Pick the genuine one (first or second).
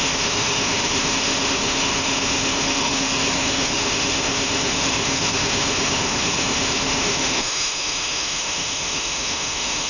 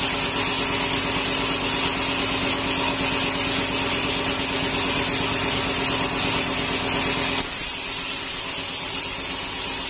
second